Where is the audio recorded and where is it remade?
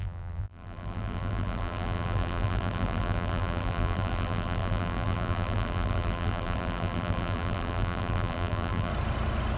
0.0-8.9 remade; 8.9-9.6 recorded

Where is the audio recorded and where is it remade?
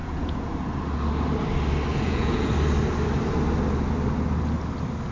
0.0-0.5 remade; 0.5-1.9 recorded; 1.9-2.5 remade; 2.5-5.1 recorded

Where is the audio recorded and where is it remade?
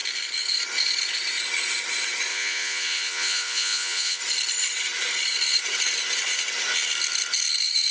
0.0-2.3 recorded; 2.3-4.2 remade; 4.2-7.9 recorded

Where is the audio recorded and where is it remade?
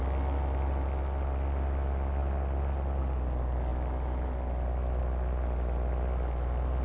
0.0-6.8 recorded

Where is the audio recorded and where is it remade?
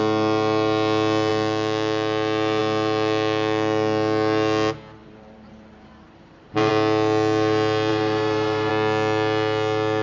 0.0-5.0 recorded; 5.0-6.7 remade; 6.7-7.9 recorded; 7.9-8.7 remade; 8.7-10.0 recorded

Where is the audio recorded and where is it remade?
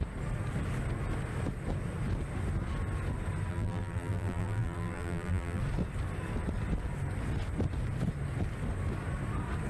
0.0-3.5 recorded; 3.5-5.6 remade; 5.6-9.7 recorded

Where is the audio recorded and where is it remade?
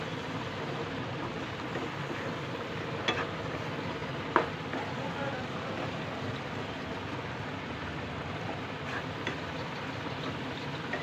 0.0-11.0 recorded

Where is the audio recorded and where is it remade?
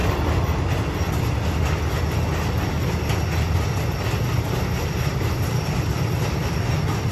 0.0-7.1 recorded